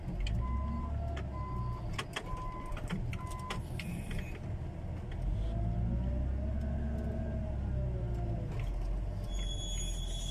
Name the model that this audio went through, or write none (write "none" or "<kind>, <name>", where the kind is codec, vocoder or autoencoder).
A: none